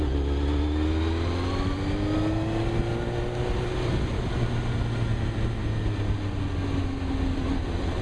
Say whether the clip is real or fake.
real